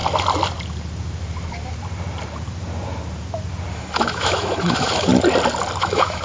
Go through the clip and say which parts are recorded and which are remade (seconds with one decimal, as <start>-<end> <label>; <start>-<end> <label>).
0.0-3.7 recorded; 3.7-5.1 remade; 5.1-5.8 recorded; 5.8-6.2 remade